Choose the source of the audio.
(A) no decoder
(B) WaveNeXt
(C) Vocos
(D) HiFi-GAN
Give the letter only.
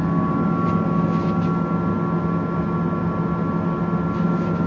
A